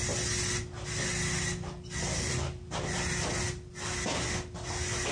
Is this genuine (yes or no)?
yes